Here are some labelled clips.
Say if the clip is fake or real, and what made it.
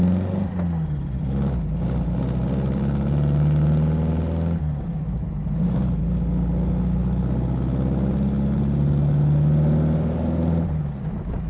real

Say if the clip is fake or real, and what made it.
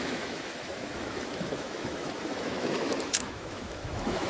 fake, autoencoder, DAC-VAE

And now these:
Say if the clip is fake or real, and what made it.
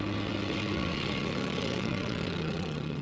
fake, vocoder, WaveNeXt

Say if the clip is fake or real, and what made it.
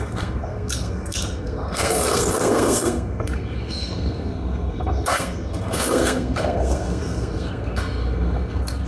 fake, codec, SNAC